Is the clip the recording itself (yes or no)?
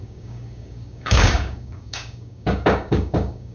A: no